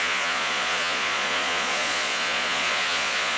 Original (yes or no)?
no